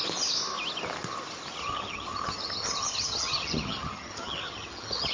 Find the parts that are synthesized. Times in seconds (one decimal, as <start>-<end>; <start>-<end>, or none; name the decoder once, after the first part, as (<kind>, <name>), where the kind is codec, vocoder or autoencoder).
1.6-5.1 (vocoder, HiFi-GAN)